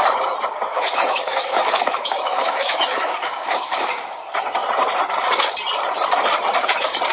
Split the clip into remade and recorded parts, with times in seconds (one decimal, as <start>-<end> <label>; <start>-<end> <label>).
0.0-0.7 recorded; 0.7-3.9 remade; 3.9-7.1 recorded